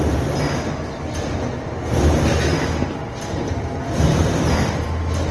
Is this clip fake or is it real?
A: real